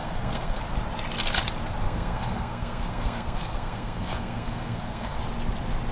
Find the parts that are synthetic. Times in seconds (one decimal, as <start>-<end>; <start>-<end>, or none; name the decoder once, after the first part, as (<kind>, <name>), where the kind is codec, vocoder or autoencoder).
0.0-0.6 (codec, SNAC); 1.8-5.2